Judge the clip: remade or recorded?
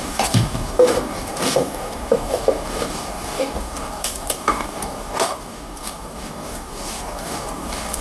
remade